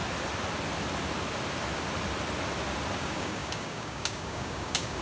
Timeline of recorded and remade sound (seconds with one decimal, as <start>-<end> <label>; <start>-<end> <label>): 0.0-3.0 recorded; 3.0-5.0 remade